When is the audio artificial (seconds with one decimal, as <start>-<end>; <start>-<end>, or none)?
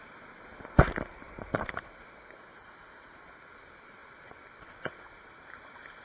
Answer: none